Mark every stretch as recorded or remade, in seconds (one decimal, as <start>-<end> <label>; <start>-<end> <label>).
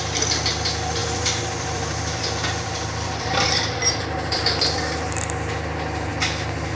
0.0-1.0 recorded; 1.0-4.8 remade; 4.8-6.8 recorded